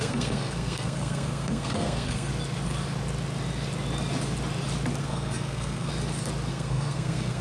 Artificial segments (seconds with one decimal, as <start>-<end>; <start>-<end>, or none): 0.0-2.3; 5.0-5.9; 6.5-7.4